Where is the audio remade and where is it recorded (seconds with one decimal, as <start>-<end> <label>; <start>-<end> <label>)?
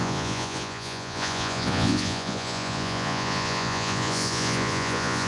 0.0-5.3 remade